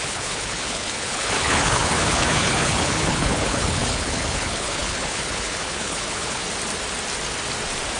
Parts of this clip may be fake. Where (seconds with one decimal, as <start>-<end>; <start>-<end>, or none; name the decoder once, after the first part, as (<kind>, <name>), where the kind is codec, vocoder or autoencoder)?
0.0-6.4 (codec, HILCodec)